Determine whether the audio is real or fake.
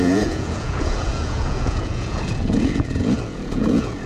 fake